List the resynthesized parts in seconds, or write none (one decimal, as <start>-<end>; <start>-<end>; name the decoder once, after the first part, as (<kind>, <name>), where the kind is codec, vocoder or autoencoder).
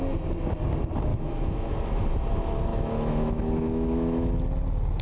1.1-1.7 (autoencoder, DAC-VAE); 2.7-4.3